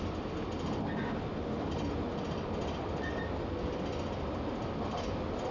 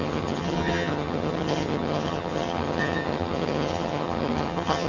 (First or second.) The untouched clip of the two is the first